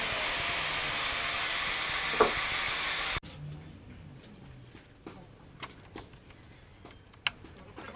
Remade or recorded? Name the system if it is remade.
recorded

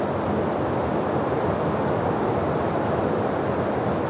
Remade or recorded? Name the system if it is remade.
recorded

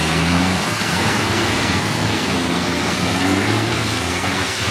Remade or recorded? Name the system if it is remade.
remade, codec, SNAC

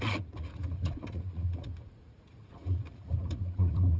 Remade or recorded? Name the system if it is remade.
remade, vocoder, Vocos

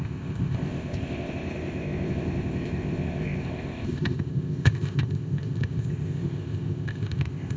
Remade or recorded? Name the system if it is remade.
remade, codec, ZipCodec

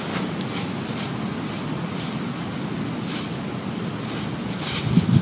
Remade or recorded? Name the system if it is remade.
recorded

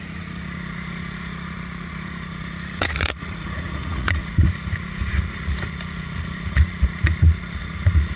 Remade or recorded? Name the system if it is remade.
remade, vocoder, Vocos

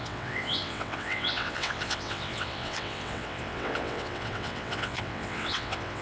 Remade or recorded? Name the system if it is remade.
remade, vocoder, WaveNeXt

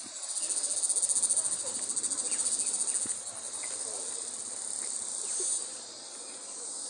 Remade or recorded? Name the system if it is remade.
recorded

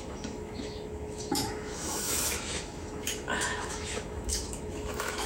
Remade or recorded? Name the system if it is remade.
remade, autoencoder, DAC-VAE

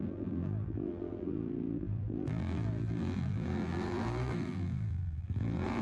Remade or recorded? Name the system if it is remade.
remade, vocoder, BigVGAN v2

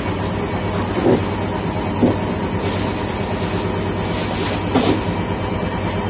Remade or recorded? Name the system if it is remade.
recorded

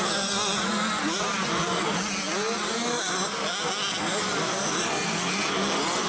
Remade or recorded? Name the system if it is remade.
recorded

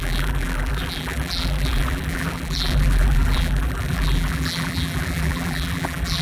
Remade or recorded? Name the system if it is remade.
remade, vocoder, BigVGAN v2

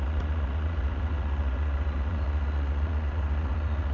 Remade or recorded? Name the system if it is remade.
remade, vocoder, Vocos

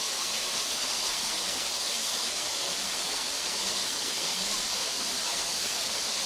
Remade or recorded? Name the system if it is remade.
remade, codec, SNAC